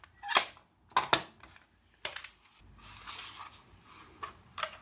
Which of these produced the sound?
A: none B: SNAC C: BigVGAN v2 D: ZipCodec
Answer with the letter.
A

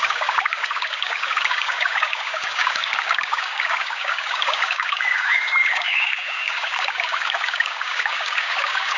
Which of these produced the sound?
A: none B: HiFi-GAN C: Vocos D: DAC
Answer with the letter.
D